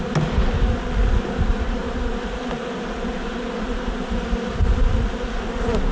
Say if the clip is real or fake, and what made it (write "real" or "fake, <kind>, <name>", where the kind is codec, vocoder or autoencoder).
real